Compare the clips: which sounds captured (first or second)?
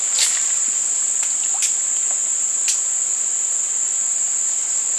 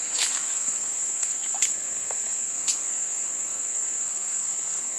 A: first